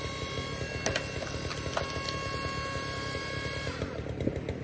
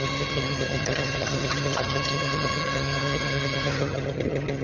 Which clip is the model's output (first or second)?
second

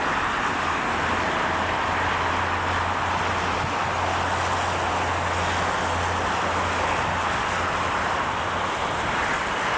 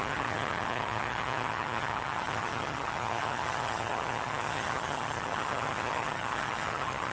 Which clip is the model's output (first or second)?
second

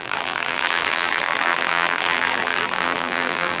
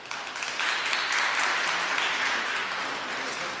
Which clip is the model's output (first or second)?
first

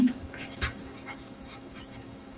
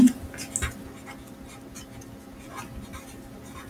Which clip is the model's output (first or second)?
first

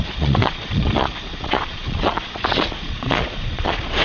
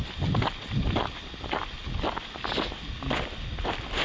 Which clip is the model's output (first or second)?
first